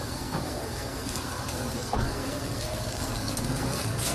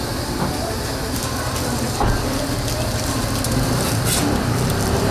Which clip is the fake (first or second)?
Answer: first